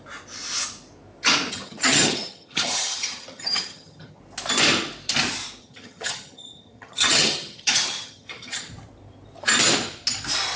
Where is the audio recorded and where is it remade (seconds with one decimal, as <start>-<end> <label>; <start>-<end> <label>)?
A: 0.0-1.5 recorded; 1.5-4.2 remade; 4.2-5.6 recorded; 5.6-8.7 remade; 8.7-10.6 recorded